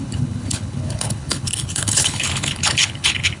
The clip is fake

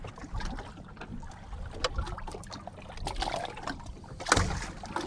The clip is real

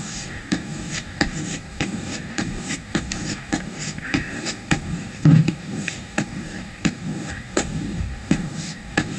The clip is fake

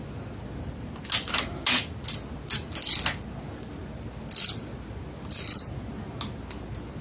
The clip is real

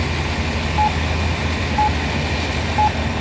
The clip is real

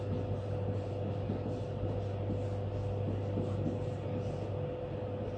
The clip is real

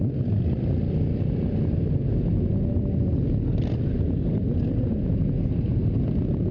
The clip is real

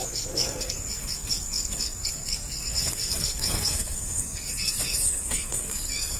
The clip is fake